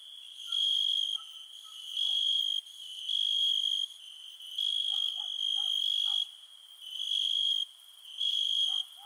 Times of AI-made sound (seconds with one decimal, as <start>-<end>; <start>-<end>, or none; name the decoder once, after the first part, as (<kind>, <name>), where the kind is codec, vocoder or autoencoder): 4.7-5.2 (codec, SNAC)